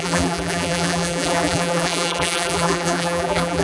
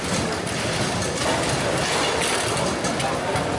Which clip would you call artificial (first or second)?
first